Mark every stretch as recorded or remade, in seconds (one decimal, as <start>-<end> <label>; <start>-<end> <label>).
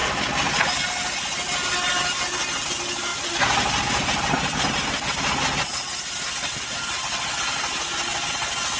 0.0-8.8 recorded